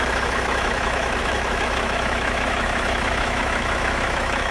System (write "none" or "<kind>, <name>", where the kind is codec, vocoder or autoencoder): autoencoder, DAC-VAE